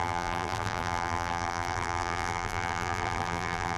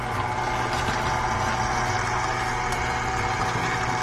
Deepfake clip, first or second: first